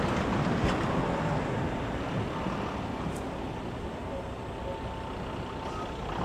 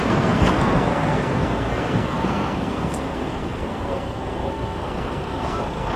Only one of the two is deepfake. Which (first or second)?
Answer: second